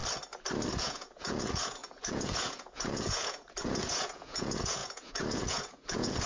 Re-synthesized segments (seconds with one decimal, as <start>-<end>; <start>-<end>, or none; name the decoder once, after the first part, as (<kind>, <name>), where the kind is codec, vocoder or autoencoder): 0.8-6.3 (vocoder, Vocos)